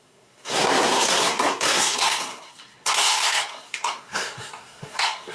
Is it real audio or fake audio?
fake